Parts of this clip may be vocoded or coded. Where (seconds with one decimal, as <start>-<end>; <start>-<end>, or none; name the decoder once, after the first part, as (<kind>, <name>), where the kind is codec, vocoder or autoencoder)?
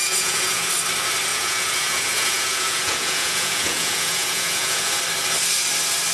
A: 0.0-0.7 (vocoder, Vocos); 1.3-5.0